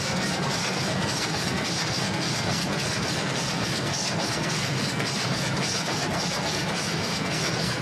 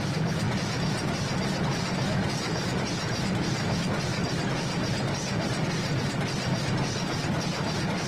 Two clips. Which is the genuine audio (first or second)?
second